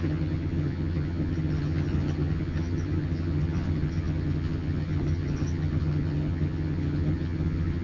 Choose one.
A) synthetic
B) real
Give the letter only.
A